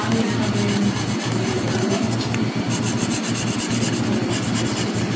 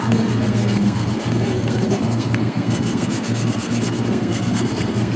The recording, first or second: first